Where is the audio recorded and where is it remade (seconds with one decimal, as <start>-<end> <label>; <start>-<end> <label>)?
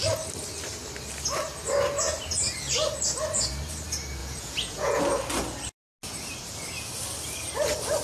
0.0-4.2 recorded; 4.2-5.0 remade; 5.0-8.0 recorded